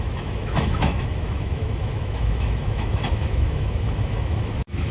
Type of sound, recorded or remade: remade